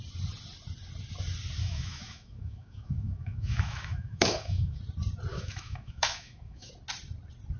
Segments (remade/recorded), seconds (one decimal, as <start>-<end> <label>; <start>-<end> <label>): 0.0-1.6 recorded; 1.6-4.8 remade; 4.8-5.3 recorded; 5.3-6.7 remade; 6.7-7.6 recorded